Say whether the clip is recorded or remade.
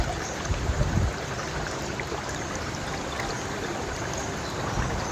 recorded